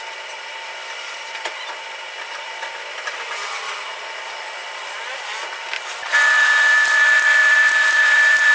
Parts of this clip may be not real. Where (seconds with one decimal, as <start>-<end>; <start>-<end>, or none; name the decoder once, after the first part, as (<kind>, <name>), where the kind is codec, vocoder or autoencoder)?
0.8-3.8 (vocoder, BigVGAN v2); 4.6-5.5; 7.4-8.5